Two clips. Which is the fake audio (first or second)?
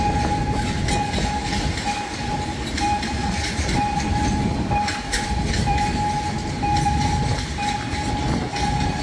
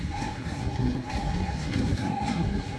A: second